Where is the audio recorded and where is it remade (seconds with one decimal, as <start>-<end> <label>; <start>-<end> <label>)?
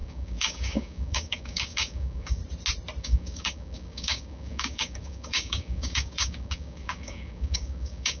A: 0.0-2.4 remade; 2.4-3.0 recorded; 3.0-8.2 remade